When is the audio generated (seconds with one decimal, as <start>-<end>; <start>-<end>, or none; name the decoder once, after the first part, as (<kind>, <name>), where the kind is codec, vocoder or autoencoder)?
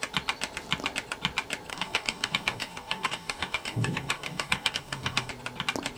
1.7-5.3 (codec, DAC)